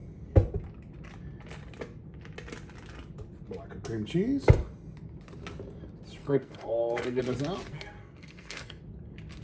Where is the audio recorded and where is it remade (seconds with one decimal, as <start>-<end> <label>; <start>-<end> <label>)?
0.0-6.2 recorded; 6.2-7.2 remade; 7.2-7.7 recorded; 7.7-8.8 remade; 8.8-9.4 recorded